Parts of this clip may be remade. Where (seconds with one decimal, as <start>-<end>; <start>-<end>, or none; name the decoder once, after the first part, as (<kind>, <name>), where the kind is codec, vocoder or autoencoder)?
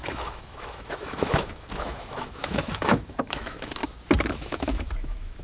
0.0-3.8 (autoencoder, DAC-VAE); 4.3-5.4